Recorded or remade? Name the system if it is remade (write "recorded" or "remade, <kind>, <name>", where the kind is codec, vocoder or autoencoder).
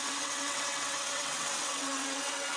remade, vocoder, WaveNeXt